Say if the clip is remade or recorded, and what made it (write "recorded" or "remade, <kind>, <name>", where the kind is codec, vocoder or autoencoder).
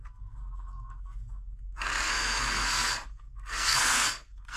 remade, codec, SNAC